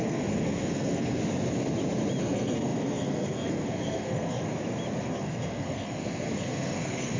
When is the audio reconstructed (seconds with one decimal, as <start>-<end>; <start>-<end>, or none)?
0.0-1.2; 2.2-4.5; 5.0-7.2